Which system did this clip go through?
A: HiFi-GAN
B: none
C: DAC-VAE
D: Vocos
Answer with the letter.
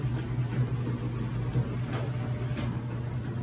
B